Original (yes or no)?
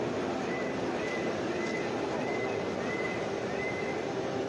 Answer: no